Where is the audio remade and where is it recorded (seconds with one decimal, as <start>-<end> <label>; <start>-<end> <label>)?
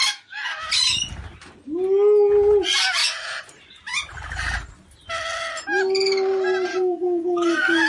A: 0.0-0.7 remade; 0.7-6.7 recorded; 6.7-7.9 remade